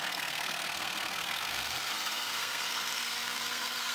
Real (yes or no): no